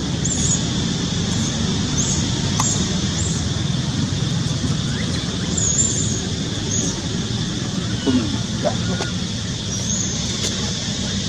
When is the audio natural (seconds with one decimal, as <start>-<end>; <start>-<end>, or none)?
0.0-11.3